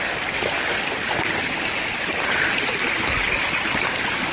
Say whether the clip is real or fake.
real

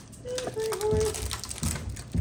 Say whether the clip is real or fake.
real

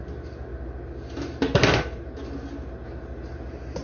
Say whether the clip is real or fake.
real